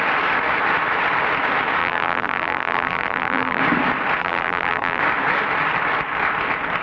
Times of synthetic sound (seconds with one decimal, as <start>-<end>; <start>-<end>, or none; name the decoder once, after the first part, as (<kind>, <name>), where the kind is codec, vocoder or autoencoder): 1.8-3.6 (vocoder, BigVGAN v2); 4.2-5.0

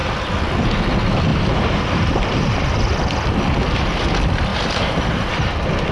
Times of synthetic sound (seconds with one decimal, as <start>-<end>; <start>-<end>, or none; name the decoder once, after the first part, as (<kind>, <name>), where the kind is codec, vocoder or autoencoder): 1.3-2.6 (vocoder, BigVGAN v2); 4.5-5.3

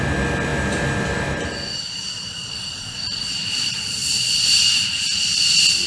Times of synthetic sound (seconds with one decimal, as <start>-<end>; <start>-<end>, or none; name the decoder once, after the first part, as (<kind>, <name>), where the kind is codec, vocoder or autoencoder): 0.5-2.5 (vocoder, BigVGAN v2)

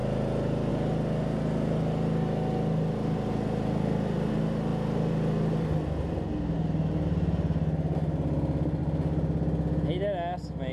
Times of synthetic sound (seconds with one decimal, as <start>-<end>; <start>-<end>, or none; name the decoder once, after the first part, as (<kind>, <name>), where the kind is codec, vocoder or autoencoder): none

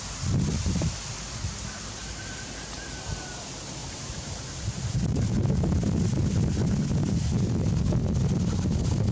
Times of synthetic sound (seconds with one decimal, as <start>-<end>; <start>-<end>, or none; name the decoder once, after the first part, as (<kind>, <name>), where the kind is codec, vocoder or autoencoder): 2.0-3.1 (vocoder, BigVGAN v2); 3.8-5.5

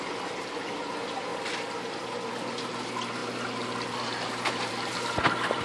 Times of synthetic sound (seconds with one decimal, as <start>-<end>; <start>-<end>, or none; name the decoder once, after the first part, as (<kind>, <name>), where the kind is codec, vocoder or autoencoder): none

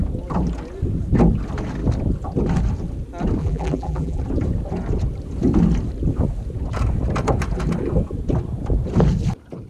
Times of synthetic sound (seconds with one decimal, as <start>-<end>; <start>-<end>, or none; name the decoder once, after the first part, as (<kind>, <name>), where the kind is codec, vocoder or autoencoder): 3.4-4.2 (vocoder, BigVGAN v2)